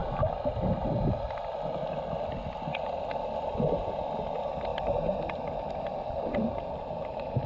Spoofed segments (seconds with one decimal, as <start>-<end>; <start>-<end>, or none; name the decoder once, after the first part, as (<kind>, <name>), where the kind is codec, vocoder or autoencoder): 4.7-5.3 (vocoder, BigVGAN v2); 6.6-7.5